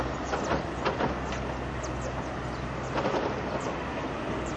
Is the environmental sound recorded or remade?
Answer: recorded